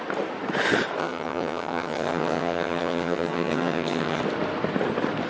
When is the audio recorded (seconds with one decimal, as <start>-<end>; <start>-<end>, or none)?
0.0-1.0; 4.2-5.3